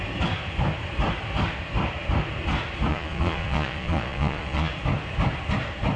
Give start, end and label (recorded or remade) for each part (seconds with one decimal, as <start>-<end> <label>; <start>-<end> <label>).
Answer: 0.0-2.9 recorded; 2.9-4.7 remade; 4.7-6.0 recorded